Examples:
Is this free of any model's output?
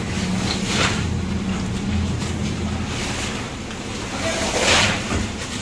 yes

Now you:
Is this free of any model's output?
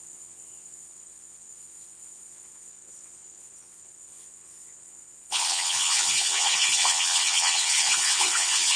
no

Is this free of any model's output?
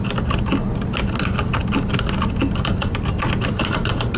yes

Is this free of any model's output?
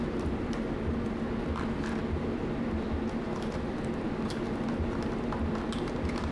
yes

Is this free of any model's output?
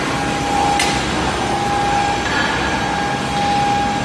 yes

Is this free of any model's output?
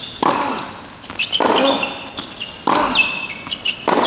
yes